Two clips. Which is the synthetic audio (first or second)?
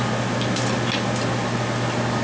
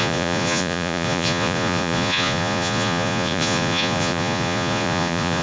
second